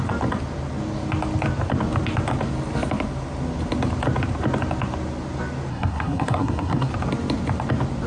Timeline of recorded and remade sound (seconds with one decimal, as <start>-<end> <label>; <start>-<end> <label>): 0.0-5.7 recorded; 5.7-6.9 remade; 6.9-8.1 recorded